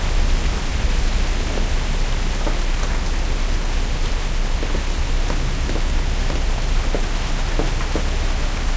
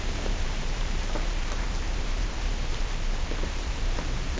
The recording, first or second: first